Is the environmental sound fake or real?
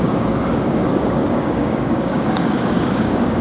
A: fake